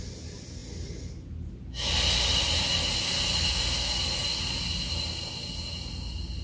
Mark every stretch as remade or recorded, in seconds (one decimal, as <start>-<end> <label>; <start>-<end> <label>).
0.0-6.4 recorded